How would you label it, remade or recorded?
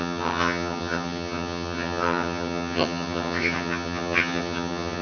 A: remade